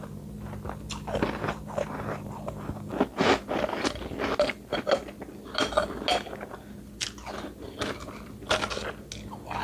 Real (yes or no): yes